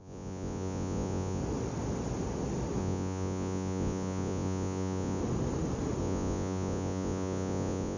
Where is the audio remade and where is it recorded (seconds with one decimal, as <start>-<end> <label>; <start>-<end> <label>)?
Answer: 0.0-1.4 remade; 1.4-2.8 recorded; 2.8-5.2 remade; 5.2-6.0 recorded; 6.0-8.0 remade